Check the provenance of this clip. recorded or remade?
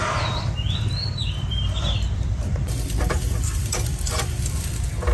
remade